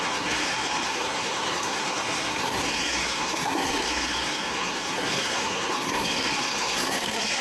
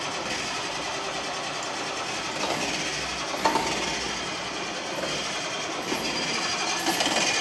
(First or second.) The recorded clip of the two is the second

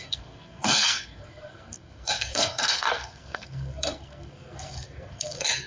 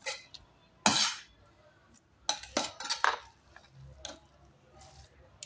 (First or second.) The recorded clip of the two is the second